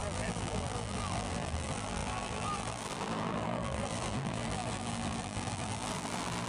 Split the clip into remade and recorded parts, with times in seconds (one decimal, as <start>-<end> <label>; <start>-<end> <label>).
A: 0.0-6.5 remade